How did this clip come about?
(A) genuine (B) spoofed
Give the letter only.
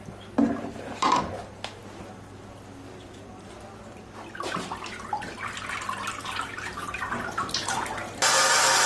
A